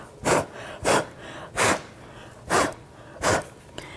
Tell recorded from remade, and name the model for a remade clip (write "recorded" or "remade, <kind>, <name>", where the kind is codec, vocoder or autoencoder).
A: remade, vocoder, BigVGAN v2